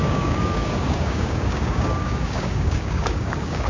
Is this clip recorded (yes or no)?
no